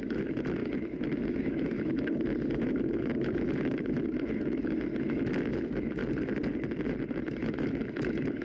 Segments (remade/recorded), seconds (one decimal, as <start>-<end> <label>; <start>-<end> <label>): 0.0-6.0 remade; 6.0-7.4 recorded; 7.4-8.4 remade